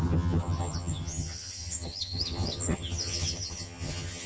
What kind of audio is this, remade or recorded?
remade